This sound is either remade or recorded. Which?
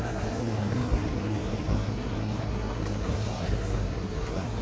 remade